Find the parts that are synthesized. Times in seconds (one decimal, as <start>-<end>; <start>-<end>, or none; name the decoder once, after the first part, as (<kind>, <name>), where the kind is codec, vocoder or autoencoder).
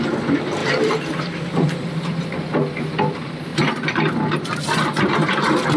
0.6-2.2 (vocoder, BigVGAN v2)